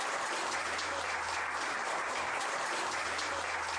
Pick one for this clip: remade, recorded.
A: recorded